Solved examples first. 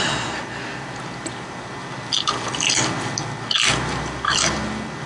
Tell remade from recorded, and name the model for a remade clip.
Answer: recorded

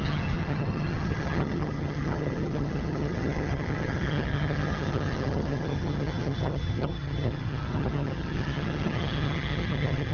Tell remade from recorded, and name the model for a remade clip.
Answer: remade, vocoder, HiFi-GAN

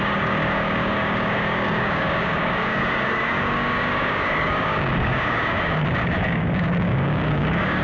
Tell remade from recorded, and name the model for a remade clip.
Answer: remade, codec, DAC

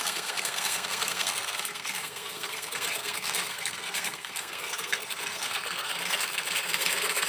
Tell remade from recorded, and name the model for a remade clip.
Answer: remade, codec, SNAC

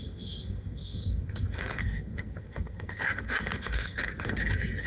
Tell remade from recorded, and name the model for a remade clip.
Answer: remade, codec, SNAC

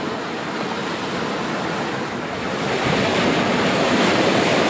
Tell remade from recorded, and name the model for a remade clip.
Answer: remade, vocoder, BigVGAN v2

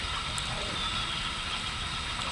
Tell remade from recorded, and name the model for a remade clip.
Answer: remade, vocoder, BigVGAN v2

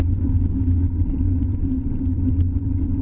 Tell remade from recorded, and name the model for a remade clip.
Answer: remade, vocoder, BigVGAN v2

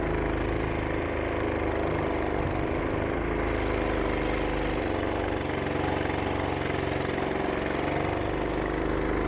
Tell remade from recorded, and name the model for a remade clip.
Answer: recorded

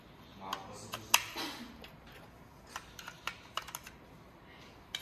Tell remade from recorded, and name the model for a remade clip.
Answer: recorded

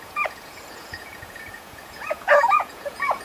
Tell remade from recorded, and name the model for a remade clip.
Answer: remade, vocoder, Vocos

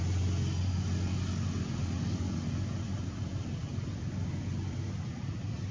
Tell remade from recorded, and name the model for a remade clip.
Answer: recorded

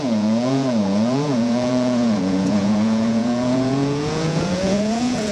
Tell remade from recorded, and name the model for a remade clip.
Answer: remade, vocoder, Vocos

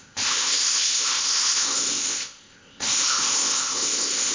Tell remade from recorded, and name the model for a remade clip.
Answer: remade, codec, ZipCodec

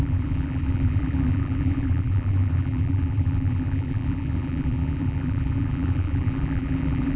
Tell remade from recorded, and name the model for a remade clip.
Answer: remade, vocoder, BigVGAN v2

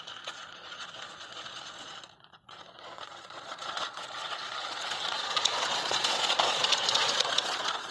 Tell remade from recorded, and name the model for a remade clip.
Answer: remade, vocoder, Vocos